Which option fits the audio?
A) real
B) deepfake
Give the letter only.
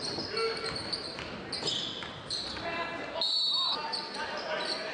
A